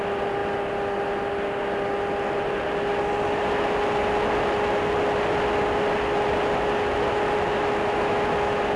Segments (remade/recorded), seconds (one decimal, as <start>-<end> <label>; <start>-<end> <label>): 0.0-8.8 recorded